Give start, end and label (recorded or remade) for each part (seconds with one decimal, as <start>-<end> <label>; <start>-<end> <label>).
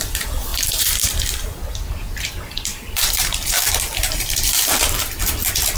0.0-2.7 recorded; 2.7-4.7 remade; 4.7-5.8 recorded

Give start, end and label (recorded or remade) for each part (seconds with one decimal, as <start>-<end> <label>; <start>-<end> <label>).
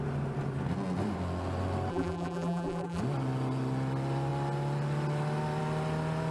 0.0-1.9 recorded; 1.9-3.0 remade; 3.0-6.3 recorded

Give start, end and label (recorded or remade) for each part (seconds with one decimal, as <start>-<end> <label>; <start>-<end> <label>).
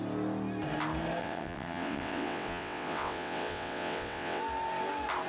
0.0-1.2 recorded; 1.2-4.4 remade; 4.4-5.3 recorded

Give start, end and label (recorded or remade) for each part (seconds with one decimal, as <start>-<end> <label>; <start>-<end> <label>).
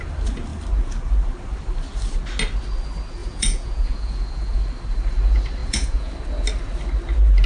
0.0-3.2 recorded; 3.2-4.6 remade; 4.6-5.6 recorded; 5.6-6.1 remade; 6.1-7.5 recorded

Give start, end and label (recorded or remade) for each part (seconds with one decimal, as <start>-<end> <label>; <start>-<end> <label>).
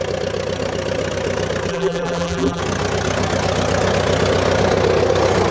0.0-1.7 recorded; 1.7-2.6 remade; 2.6-5.5 recorded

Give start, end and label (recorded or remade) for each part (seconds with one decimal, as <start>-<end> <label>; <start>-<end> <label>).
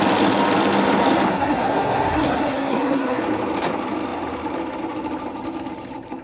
0.0-1.3 recorded; 1.3-3.2 remade; 3.2-6.2 recorded